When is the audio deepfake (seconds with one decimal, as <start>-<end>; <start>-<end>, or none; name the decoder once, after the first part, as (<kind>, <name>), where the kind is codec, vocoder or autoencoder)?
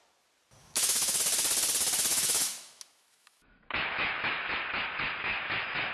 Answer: 0.6-1.2 (autoencoder, DAC-VAE); 2.1-4.6; 5.3-5.9